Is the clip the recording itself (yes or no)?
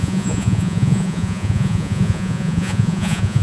no